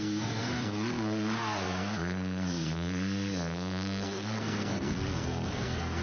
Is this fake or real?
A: fake